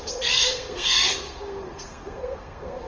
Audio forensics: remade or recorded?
remade